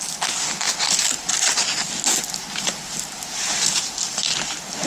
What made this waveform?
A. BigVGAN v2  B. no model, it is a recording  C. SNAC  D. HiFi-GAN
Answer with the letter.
B